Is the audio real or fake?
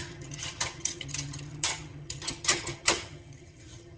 fake